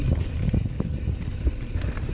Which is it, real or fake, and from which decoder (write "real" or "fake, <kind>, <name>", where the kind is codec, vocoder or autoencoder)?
real